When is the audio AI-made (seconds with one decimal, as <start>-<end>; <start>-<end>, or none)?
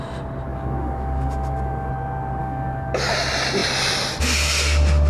0.5-1.9; 2.4-3.1